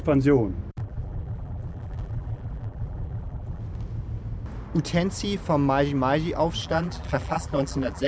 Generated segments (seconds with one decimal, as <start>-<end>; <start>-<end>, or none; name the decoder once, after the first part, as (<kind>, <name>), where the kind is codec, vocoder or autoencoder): 0.8-3.6 (vocoder, BigVGAN v2); 6.6-8.1